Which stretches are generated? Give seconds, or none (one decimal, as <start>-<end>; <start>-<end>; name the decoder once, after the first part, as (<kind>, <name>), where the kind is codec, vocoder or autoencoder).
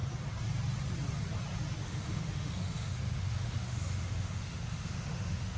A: 1.8-5.6 (autoencoder, DAC-VAE)